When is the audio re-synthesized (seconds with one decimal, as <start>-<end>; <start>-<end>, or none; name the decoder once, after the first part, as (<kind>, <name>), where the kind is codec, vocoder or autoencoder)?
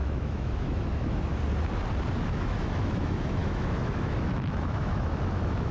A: 0.0-1.3 (autoencoder, DAC-VAE); 2.1-5.7